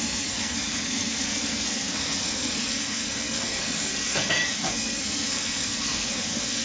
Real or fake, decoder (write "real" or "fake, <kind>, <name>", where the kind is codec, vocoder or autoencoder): fake, codec, SNAC